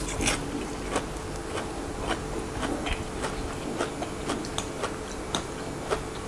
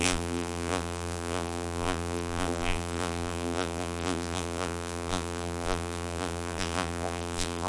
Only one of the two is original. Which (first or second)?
first